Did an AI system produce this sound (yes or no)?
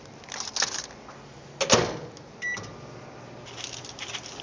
no